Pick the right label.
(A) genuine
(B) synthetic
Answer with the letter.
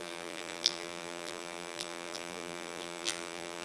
B